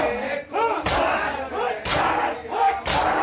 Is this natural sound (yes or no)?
no